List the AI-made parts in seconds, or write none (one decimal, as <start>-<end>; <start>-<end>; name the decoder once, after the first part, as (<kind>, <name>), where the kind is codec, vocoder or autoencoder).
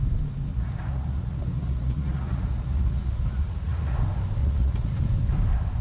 0.5-4.0 (vocoder, Vocos); 4.4-5.0